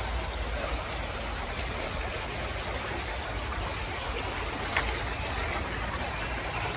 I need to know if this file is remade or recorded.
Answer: recorded